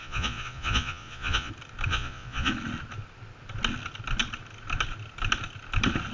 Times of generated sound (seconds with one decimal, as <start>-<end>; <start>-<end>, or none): 0.0-1.5; 1.9-2.5